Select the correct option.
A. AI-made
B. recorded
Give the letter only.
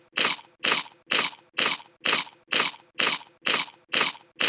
B